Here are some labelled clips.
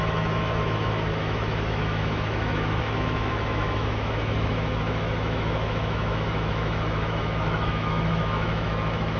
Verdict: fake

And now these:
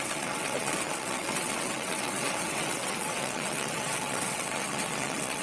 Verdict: fake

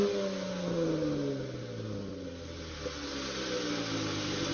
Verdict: real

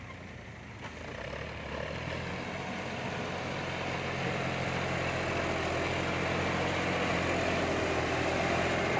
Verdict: real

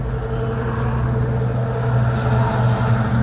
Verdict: real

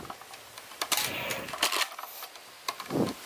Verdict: real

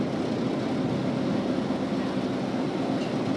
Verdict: real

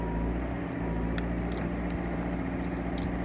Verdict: real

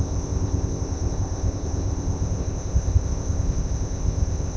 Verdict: fake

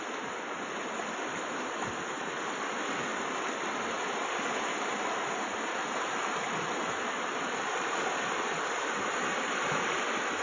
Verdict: real